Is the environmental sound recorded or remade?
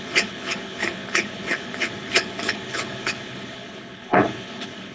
remade